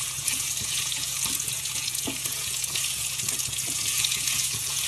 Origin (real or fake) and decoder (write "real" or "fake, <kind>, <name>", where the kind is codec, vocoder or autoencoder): fake, vocoder, Vocos